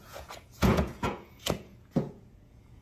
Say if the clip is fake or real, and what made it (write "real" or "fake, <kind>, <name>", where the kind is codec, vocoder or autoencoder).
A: fake, vocoder, Vocos